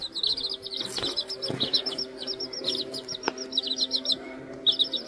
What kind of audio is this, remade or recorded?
recorded